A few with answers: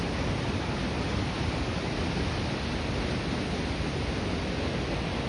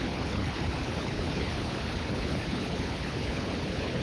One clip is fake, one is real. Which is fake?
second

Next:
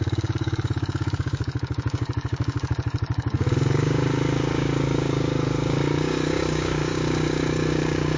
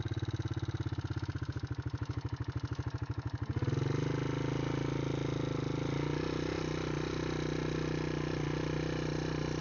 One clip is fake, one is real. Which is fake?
first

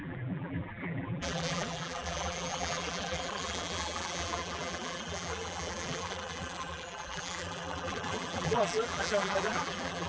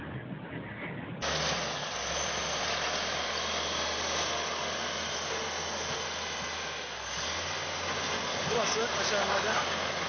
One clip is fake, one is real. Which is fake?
first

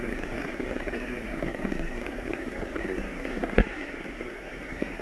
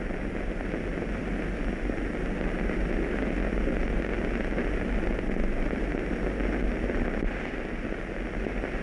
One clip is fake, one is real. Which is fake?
first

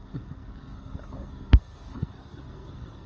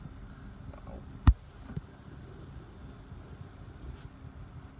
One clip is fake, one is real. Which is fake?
first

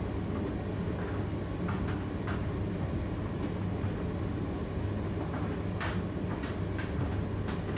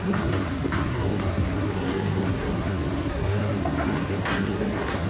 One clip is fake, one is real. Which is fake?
second